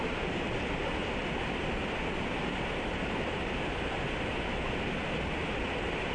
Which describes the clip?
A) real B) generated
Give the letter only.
A